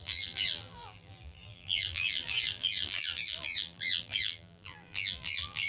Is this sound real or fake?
fake